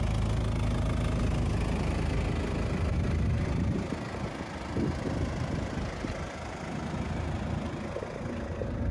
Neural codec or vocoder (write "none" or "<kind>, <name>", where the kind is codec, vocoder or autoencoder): none